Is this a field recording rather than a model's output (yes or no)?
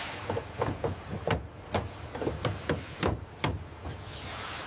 yes